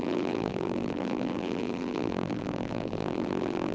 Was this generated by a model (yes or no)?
yes